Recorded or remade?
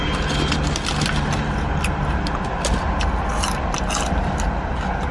recorded